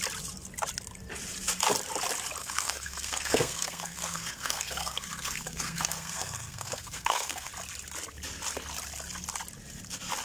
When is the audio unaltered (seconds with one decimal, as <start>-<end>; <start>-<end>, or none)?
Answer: 0.0-2.4; 7.5-10.2